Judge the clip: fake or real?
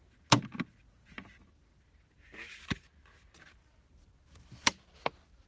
real